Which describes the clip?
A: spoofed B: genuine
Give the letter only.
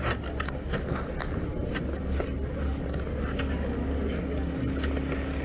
B